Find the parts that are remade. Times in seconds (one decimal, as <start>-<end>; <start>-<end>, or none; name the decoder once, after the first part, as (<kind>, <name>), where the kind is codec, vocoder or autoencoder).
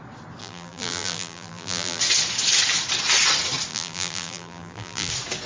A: 0.4-2.0 (vocoder, BigVGAN v2); 3.7-5.1